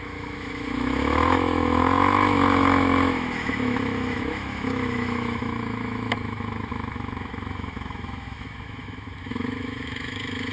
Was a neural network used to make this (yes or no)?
yes